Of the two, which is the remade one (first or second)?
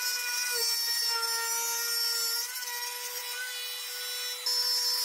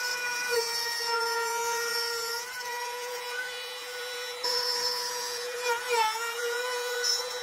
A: second